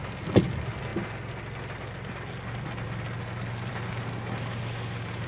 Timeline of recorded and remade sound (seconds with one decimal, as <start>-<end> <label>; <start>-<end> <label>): 0.0-5.3 recorded